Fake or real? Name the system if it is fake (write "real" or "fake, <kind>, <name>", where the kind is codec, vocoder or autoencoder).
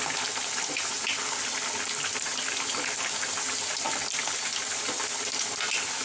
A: real